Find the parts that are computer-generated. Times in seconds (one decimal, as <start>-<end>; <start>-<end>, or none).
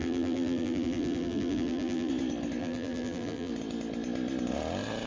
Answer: 0.0-2.1; 2.6-3.5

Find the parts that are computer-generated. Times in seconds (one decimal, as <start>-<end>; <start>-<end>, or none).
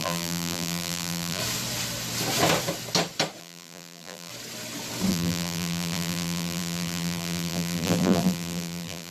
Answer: 0.0-1.4; 3.4-4.3; 5.1-9.1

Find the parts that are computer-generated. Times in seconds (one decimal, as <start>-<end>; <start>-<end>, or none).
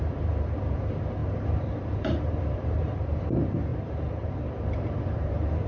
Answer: 0.0-5.7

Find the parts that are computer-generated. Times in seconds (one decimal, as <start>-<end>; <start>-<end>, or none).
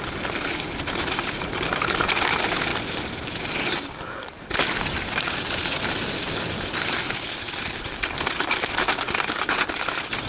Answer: 0.0-2.7; 3.4-10.3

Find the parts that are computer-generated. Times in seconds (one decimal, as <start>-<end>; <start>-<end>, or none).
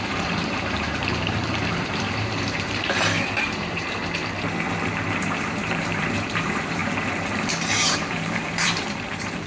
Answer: 0.0-4.0; 5.2-9.5